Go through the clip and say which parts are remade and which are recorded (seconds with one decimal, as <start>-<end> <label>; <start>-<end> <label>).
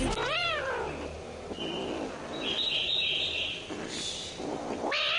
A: 0.0-0.4 recorded; 0.4-1.2 remade; 1.2-5.2 recorded